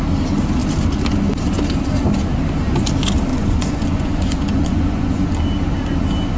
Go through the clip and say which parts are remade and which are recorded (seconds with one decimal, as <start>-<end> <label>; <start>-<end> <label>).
0.0-3.3 recorded; 3.3-5.3 remade; 5.3-6.4 recorded